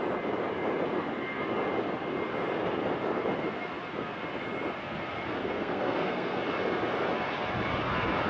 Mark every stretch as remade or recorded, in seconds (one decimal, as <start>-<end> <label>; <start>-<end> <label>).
0.0-5.4 recorded; 5.4-6.4 remade; 6.4-8.3 recorded